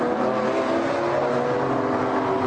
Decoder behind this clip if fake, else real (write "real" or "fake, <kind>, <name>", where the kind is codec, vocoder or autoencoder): real